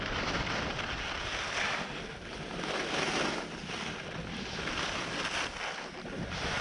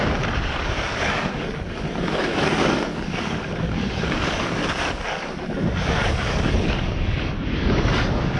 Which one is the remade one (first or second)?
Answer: second